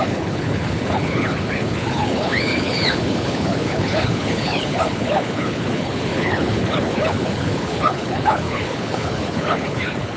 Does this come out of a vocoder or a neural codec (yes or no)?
yes